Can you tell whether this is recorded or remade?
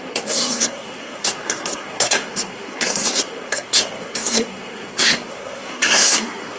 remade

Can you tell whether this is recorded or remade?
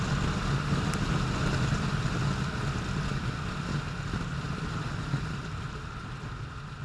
recorded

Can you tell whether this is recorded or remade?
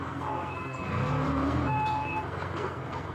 remade